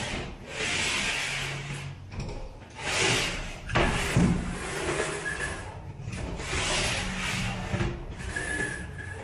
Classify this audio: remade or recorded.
recorded